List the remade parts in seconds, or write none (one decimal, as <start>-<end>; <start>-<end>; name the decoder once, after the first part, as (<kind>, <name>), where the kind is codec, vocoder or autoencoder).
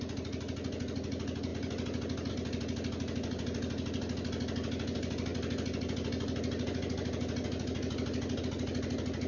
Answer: none